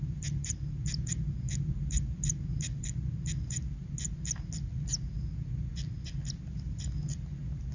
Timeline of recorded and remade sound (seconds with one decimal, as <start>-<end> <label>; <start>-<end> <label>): 0.0-7.7 recorded